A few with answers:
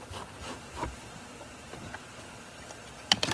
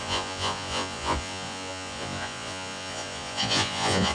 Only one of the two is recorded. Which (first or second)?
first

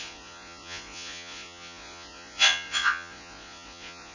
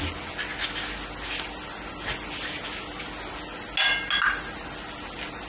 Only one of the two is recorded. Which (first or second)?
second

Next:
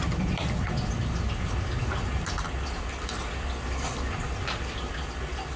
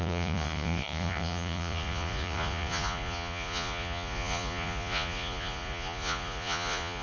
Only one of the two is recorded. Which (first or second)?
first